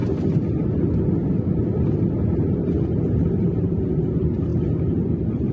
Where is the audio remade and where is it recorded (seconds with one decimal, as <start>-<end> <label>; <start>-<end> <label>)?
0.0-2.6 recorded; 2.6-3.8 remade; 3.8-4.5 recorded; 4.5-5.5 remade